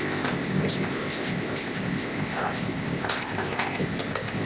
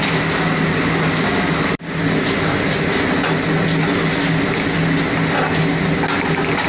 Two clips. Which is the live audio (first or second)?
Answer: second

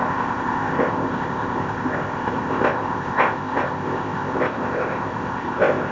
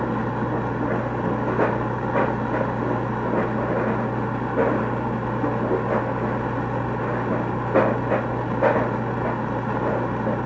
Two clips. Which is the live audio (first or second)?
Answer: second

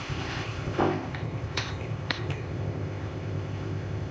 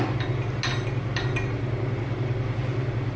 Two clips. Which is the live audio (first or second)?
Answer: second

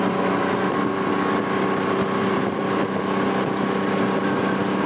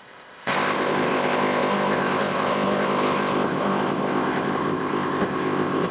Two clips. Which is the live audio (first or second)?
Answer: first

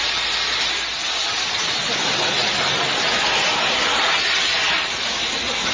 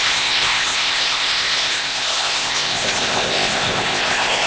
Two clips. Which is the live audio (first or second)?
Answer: first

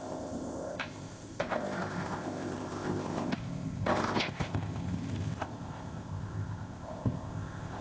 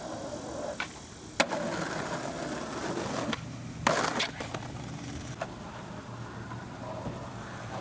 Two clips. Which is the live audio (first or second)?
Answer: second